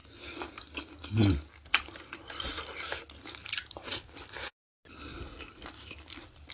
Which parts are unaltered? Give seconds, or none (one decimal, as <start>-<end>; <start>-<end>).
0.0-6.5